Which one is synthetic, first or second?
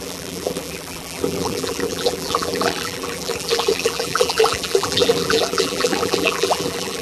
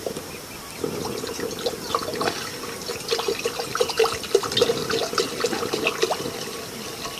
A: first